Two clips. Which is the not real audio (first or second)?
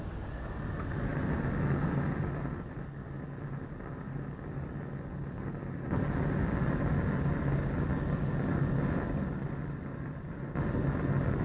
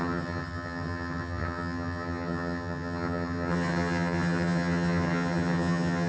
second